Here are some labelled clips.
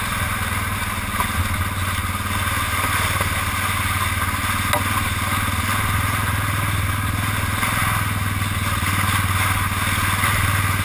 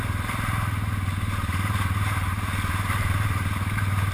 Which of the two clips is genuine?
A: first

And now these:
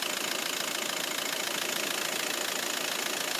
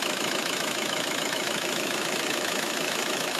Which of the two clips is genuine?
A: first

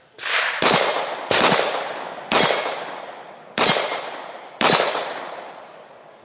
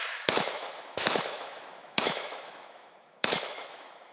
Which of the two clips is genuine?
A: first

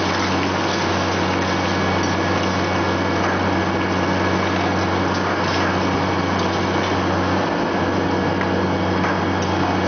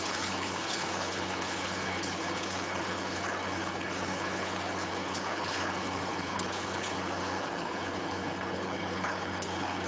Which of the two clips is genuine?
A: first